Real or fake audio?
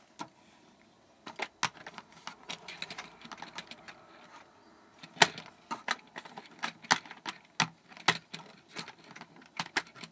real